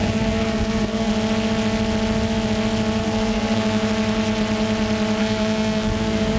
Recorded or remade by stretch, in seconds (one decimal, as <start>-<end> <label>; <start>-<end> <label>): 0.0-1.1 remade; 1.1-3.0 recorded; 3.0-3.9 remade; 3.9-5.2 recorded; 5.2-6.4 remade